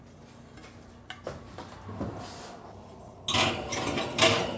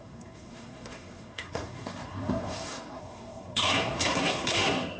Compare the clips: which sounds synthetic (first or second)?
second